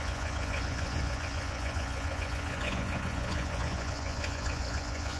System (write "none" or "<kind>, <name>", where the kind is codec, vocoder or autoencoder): vocoder, Vocos